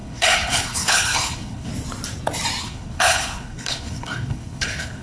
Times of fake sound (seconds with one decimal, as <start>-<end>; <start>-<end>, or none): 0.0-1.7; 2.6-5.0